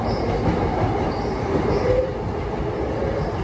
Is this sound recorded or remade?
recorded